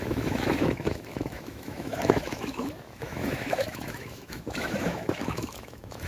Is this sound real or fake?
fake